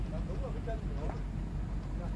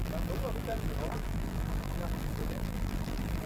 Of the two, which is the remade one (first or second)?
second